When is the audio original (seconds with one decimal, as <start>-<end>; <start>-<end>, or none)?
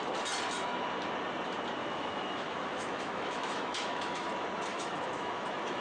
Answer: 0.0-1.8; 4.3-4.7